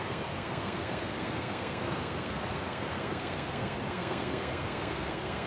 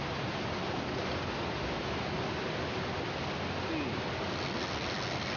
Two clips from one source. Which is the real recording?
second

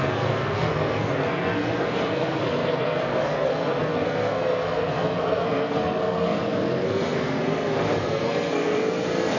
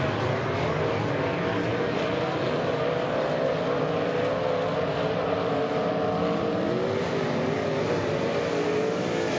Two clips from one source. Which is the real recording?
second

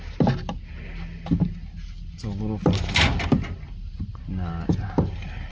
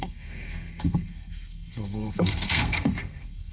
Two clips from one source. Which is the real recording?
first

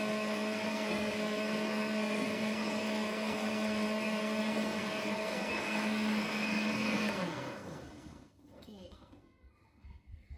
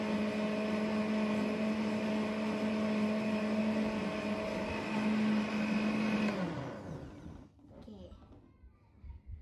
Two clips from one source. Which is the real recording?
second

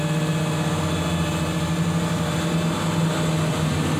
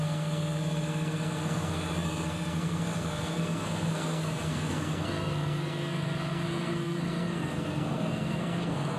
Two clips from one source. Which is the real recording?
first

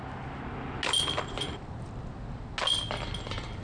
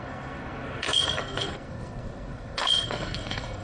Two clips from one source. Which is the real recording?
first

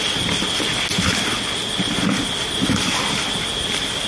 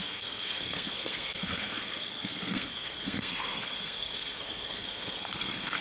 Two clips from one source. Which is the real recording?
first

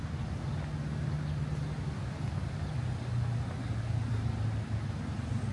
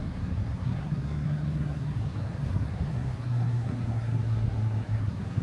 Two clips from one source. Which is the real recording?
first